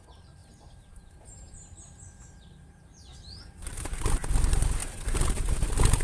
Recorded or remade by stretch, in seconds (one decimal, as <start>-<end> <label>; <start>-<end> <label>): 0.0-0.4 recorded; 0.4-4.0 remade; 4.0-4.8 recorded; 4.8-5.5 remade; 5.5-6.0 recorded